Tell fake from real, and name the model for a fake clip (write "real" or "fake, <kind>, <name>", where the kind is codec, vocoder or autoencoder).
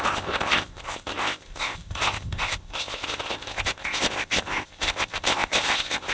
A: fake, codec, ZipCodec